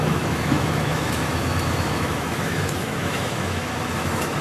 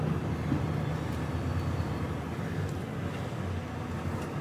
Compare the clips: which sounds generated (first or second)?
first